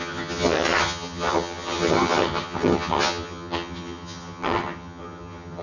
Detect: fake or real fake